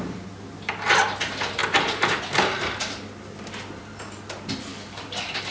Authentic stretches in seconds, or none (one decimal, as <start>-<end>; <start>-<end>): 0.0-4.7